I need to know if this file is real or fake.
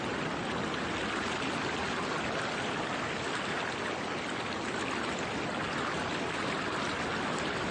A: real